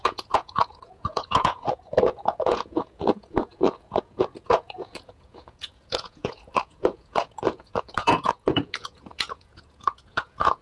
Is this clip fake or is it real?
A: fake